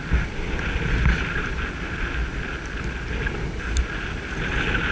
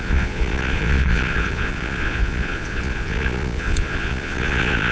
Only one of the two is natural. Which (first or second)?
first